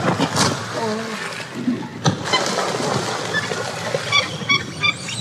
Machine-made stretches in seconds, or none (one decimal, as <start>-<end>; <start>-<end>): none